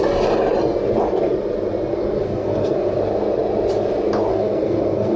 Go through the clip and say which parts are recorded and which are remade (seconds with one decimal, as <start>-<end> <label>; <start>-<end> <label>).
0.0-1.9 recorded; 1.9-2.9 remade; 2.9-4.3 recorded; 4.3-5.2 remade

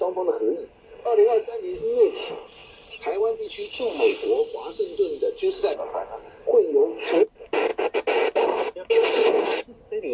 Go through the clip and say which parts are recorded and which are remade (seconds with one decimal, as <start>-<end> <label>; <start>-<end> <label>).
0.0-2.6 recorded; 2.6-4.1 remade; 4.1-10.1 recorded

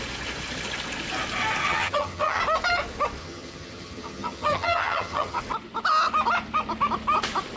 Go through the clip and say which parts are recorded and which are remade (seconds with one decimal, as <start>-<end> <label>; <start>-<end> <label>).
0.0-1.6 recorded; 1.6-2.4 remade; 2.4-3.2 recorded; 3.2-5.4 remade; 5.4-7.6 recorded

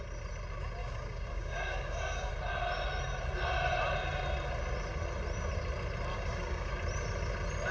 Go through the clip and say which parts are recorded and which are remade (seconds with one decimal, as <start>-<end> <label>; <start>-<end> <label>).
0.0-0.8 recorded; 0.8-2.3 remade; 2.3-6.1 recorded; 6.1-6.7 remade; 6.7-7.7 recorded

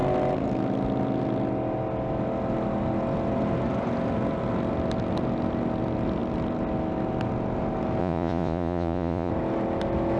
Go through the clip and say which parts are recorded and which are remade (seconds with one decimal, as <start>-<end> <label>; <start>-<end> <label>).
0.0-8.0 recorded; 8.0-9.3 remade; 9.3-10.2 recorded